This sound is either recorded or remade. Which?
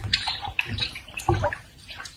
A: remade